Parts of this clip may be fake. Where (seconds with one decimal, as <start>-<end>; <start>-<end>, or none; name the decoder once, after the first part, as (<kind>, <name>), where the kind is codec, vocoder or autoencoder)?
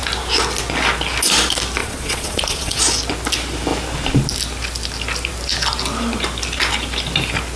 1.8-2.8 (vocoder, Vocos)